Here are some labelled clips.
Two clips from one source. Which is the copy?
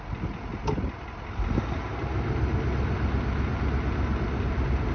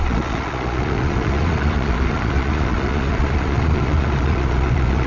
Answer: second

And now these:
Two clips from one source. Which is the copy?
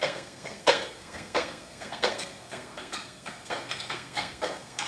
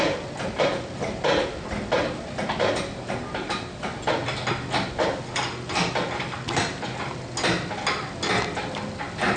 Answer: first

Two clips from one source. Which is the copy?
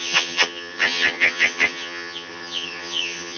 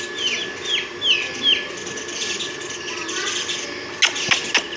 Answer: first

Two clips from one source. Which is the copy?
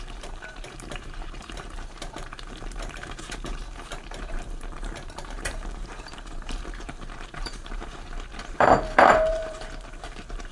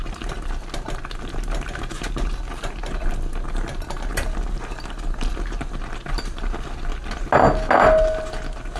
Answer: first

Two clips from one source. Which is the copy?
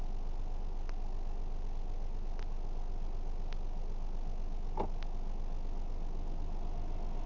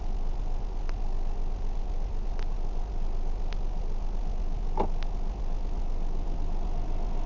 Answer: second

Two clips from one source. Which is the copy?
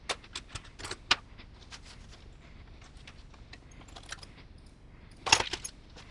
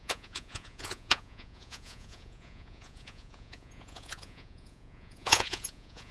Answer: second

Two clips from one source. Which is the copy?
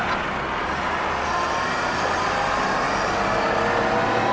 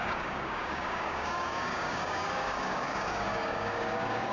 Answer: second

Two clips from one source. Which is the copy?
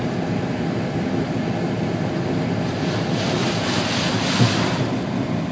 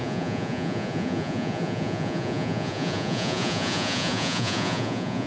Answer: second